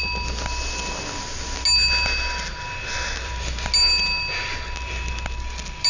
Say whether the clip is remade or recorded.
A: recorded